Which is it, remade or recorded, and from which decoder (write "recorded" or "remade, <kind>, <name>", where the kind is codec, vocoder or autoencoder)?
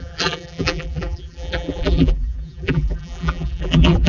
remade, vocoder, BigVGAN v2